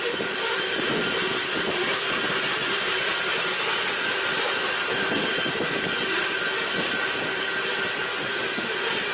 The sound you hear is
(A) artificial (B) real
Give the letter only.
A